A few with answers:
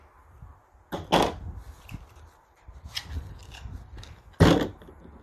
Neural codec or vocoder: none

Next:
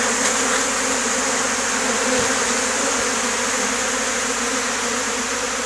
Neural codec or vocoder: none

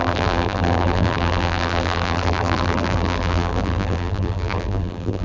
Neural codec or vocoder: vocoder, BigVGAN v2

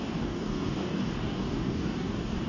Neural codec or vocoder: codec, DAC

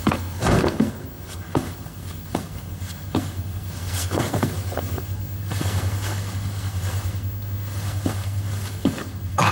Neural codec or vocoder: codec, SNAC